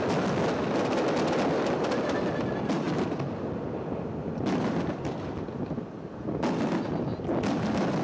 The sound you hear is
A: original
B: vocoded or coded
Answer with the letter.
A